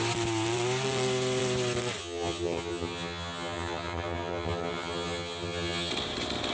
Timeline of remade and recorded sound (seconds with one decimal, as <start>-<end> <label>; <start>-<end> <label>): 0.0-2.0 recorded; 2.0-5.9 remade; 5.9-6.5 recorded